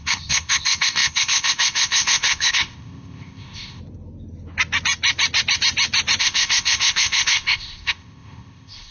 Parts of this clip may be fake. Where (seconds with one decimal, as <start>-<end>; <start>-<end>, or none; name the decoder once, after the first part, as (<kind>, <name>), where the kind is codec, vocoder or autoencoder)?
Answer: 0.0-3.8 (codec, ZipCodec); 6.2-8.9

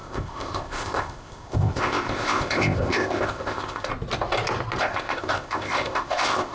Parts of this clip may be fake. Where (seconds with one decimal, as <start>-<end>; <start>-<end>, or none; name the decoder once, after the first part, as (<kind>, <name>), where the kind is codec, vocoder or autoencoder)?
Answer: 0.0-3.9 (codec, ZipCodec); 4.8-6.5